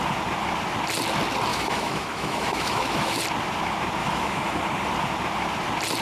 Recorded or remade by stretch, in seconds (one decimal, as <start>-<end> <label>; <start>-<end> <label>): 0.0-1.5 recorded; 1.5-3.2 remade; 3.2-4.0 recorded; 4.0-4.6 remade; 4.6-6.0 recorded